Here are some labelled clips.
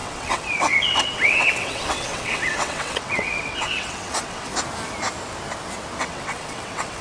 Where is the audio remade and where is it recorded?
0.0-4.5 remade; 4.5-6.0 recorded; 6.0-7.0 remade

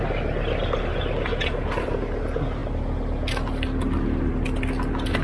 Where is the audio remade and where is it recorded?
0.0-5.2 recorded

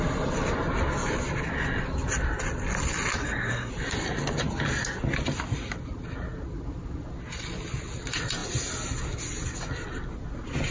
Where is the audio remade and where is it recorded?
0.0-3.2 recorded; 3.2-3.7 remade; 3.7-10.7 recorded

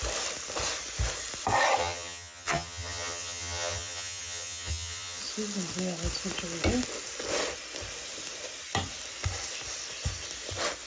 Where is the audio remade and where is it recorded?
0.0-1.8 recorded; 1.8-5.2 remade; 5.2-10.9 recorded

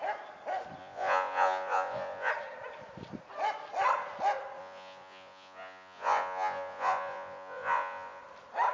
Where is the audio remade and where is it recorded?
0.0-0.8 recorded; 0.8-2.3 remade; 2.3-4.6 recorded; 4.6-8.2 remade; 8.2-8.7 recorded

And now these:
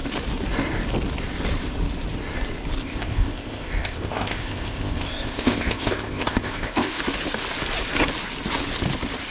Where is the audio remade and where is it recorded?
0.0-2.8 recorded; 2.8-7.0 remade; 7.0-9.3 recorded

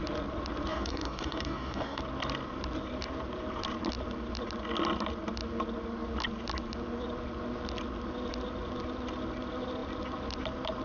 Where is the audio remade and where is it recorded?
0.0-0.7 recorded; 0.7-2.0 remade; 2.0-10.8 recorded

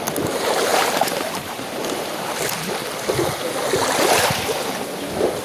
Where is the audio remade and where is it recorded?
0.0-0.7 recorded; 0.7-2.3 remade; 2.3-5.4 recorded